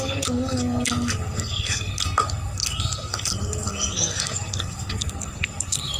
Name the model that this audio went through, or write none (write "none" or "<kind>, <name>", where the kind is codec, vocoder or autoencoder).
codec, SNAC